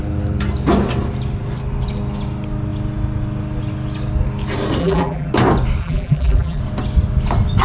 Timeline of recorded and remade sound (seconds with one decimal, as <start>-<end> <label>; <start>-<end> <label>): 0.0-4.8 recorded; 4.8-5.3 remade; 5.3-5.8 recorded; 5.8-6.6 remade; 6.6-7.6 recorded